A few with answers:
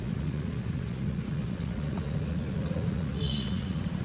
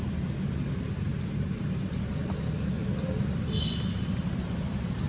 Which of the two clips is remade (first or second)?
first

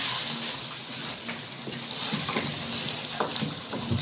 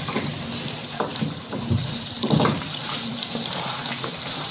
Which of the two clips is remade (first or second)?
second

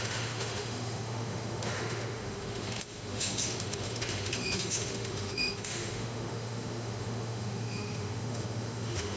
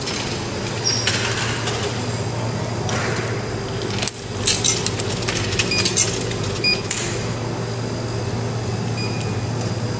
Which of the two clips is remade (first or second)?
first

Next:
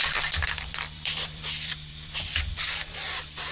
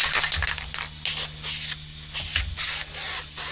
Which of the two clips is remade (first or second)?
first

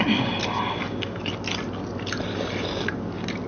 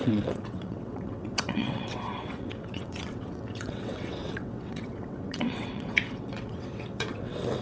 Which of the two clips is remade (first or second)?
second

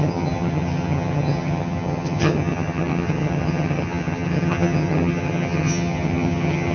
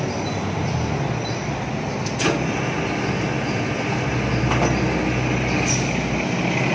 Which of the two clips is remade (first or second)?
first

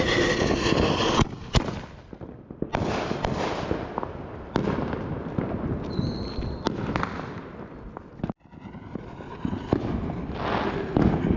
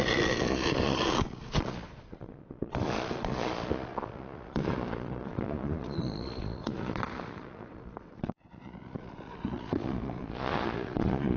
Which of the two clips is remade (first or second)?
second